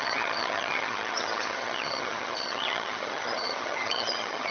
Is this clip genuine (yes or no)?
no